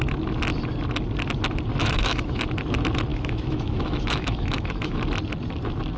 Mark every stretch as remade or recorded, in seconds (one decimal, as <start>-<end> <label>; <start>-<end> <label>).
0.0-1.8 recorded; 1.8-2.4 remade; 2.4-3.1 recorded; 3.1-5.0 remade; 5.0-6.0 recorded